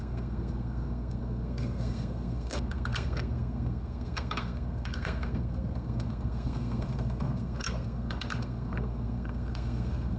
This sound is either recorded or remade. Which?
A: remade